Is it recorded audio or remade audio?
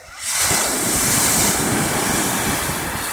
recorded